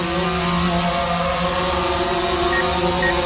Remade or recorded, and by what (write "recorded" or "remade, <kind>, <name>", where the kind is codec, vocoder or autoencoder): recorded